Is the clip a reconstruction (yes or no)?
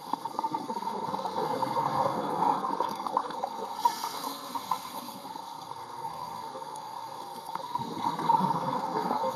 yes